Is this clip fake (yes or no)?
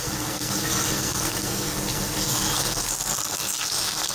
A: yes